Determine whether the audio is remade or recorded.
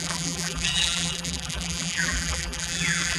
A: remade